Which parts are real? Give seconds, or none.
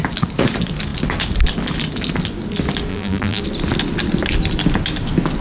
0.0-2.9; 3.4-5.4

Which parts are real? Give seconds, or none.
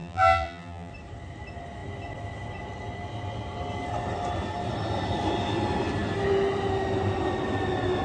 0.9-8.0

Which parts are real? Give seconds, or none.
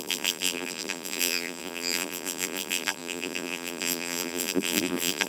none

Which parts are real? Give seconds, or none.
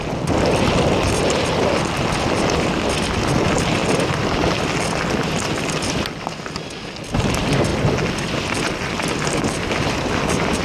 0.0-3.8; 6.6-7.7; 8.9-10.6